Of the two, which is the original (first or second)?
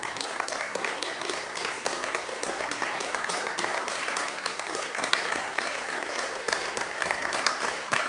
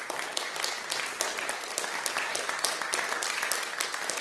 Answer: second